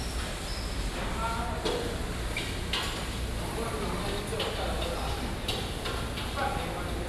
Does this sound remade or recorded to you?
recorded